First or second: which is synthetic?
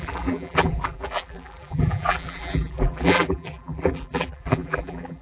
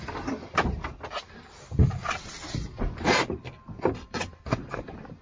first